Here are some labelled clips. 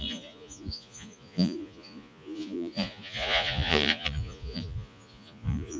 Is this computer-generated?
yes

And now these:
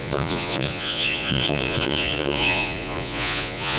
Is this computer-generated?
yes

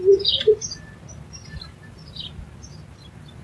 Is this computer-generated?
no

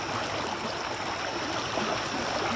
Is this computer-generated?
no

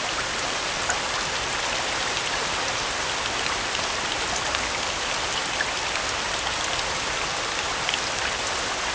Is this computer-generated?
no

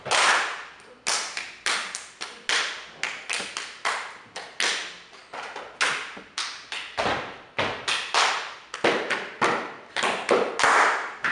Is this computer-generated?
no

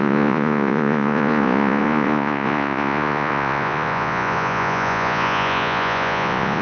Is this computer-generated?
yes